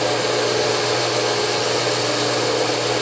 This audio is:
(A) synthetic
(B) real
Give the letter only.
B